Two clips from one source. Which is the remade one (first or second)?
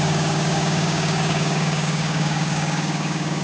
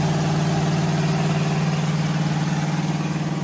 first